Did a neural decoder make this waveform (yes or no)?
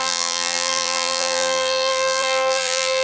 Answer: yes